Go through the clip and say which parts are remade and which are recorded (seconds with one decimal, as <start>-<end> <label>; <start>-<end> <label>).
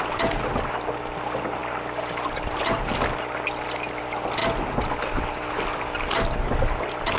0.0-7.2 recorded